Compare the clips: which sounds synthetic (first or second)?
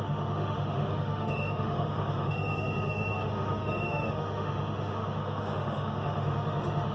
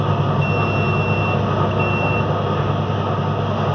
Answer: first